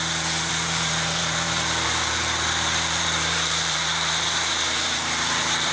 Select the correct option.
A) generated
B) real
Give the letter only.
A